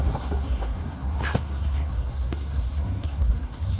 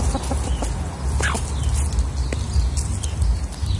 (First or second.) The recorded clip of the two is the second